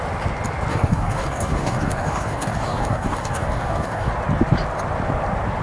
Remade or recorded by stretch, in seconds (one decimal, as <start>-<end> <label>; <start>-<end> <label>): 0.0-0.7 recorded; 0.7-4.1 remade; 4.1-5.6 recorded